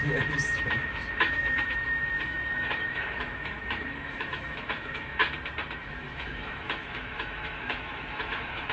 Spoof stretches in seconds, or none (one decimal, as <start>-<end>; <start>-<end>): 0.0-5.2; 5.8-8.7